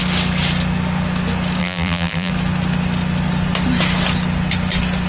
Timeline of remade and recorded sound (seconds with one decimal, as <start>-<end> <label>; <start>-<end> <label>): 0.0-1.6 recorded; 1.6-2.3 remade; 2.3-5.1 recorded

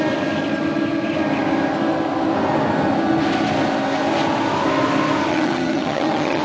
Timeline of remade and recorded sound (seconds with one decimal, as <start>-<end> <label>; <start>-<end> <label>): 0.0-5.3 recorded; 5.3-6.4 remade

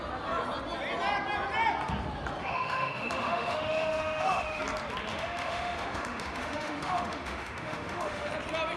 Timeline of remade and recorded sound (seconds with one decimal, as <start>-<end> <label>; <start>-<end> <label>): 0.0-2.4 recorded; 2.4-4.6 remade; 4.6-5.1 recorded; 5.1-8.3 remade; 8.3-8.8 recorded